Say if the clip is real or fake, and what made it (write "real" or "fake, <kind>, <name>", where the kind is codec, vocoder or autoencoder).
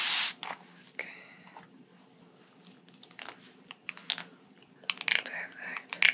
real